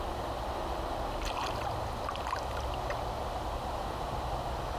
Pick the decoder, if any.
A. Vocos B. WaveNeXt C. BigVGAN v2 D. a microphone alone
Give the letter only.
D